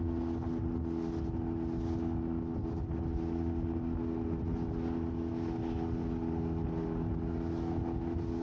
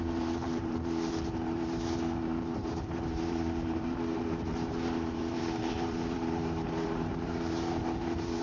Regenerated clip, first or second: second